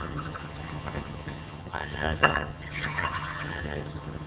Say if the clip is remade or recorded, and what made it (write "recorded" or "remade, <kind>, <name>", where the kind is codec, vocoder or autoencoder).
remade, vocoder, HiFi-GAN